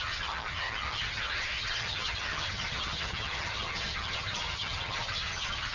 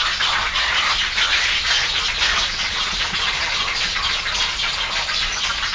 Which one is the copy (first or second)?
first